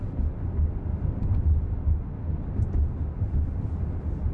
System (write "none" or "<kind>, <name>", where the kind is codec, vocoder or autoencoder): none